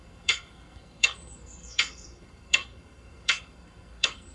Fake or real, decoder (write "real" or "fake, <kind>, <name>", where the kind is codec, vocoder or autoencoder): fake, codec, SNAC